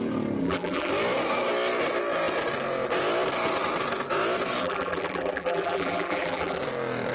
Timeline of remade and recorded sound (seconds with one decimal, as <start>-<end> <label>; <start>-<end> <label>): 0.0-0.4 recorded; 0.4-0.9 remade; 0.9-4.6 recorded; 4.6-6.6 remade; 6.6-7.1 recorded